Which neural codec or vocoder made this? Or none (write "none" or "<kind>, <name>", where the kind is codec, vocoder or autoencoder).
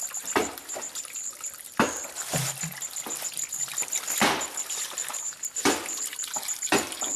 none